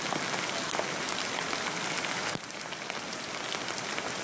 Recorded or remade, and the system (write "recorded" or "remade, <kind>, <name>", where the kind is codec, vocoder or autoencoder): recorded